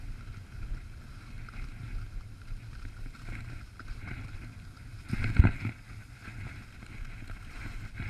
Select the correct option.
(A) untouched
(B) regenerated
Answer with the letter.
A